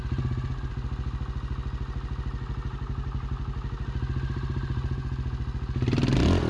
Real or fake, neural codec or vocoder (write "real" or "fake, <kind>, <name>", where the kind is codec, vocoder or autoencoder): real